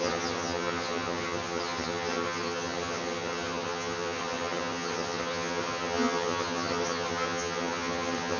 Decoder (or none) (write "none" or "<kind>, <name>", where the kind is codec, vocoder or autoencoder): vocoder, HiFi-GAN